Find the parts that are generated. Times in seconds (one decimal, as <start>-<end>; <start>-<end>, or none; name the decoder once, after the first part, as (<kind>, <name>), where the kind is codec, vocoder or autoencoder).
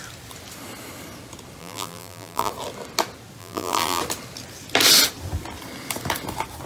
1.6-2.5 (vocoder, BigVGAN v2); 3.4-4.0